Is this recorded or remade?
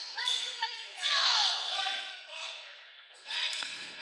remade